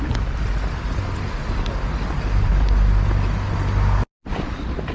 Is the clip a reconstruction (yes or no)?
no